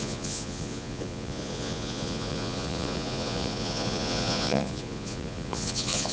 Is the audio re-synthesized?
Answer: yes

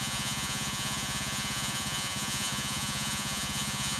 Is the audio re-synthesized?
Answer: yes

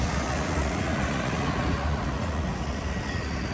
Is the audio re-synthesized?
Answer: yes